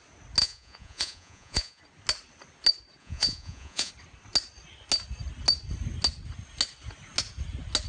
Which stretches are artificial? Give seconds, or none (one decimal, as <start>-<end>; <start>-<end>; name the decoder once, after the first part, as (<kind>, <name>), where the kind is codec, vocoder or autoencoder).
0.4-1.8 (vocoder, Vocos); 3.0-3.9